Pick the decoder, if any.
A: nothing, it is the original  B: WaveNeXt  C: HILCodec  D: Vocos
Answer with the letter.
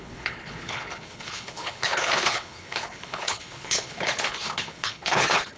C